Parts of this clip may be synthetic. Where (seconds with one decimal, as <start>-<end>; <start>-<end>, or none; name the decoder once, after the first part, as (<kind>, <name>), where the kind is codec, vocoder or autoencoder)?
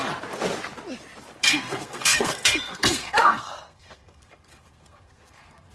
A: 1.4-5.7 (codec, SNAC)